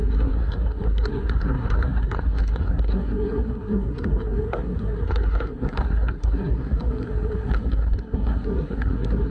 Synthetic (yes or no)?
yes